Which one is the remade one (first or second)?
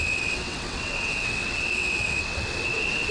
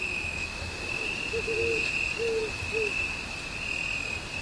first